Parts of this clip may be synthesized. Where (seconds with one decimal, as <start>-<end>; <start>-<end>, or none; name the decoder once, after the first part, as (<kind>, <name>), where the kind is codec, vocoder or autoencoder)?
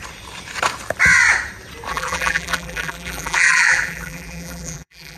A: 1.9-5.2 (vocoder, BigVGAN v2)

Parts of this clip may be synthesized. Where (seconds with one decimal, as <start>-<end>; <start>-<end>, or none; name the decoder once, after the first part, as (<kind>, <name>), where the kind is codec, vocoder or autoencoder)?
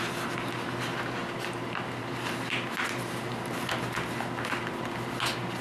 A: none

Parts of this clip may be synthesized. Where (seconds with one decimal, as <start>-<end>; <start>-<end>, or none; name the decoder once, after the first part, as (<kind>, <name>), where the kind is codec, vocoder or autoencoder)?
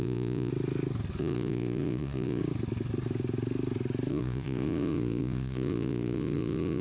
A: 0.0-0.5 (vocoder, Vocos); 1.2-2.4; 4.1-6.8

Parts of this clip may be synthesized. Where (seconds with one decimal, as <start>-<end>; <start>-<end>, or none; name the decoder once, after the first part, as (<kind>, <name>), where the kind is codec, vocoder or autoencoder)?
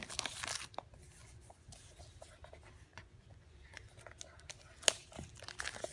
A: 1.2-1.7 (vocoder, Vocos); 2.9-3.9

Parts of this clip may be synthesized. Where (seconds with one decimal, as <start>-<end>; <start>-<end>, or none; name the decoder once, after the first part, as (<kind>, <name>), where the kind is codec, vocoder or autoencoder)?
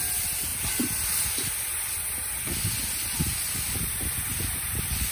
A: 0.0-0.5 (vocoder, BigVGAN v2); 1.2-5.1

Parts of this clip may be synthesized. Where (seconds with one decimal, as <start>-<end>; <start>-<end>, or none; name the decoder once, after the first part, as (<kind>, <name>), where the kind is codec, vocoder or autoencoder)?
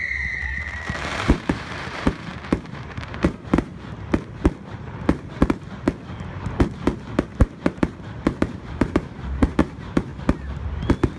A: 0.0-3.7 (vocoder, BigVGAN v2); 7.4-10.1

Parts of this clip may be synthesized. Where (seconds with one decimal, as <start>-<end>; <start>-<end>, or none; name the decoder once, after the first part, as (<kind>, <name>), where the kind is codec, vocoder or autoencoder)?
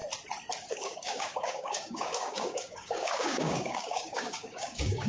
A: 0.7-5.1 (codec, DAC)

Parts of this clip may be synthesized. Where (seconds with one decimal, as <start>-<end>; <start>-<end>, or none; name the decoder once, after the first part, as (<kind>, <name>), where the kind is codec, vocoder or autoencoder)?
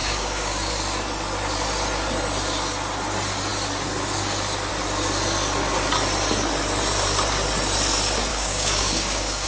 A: 0.0-0.7 (codec, DAC); 8.3-9.5